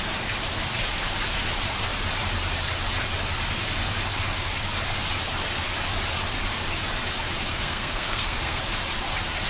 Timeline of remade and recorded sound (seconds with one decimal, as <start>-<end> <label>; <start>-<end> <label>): 0.0-7.5 recorded; 7.5-8.6 remade; 8.6-9.5 recorded